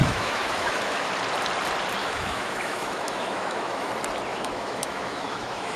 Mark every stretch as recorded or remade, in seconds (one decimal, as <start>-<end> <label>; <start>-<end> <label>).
0.0-1.1 remade; 1.1-2.0 recorded; 2.0-3.9 remade; 3.9-4.3 recorded; 4.3-5.8 remade